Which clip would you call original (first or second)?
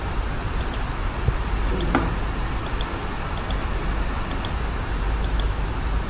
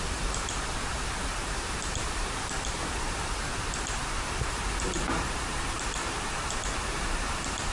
first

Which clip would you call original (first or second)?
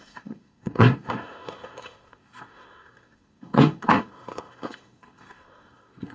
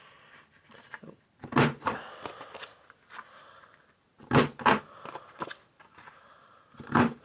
second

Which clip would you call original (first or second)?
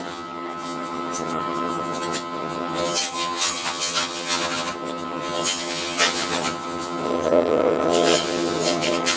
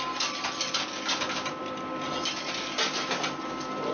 second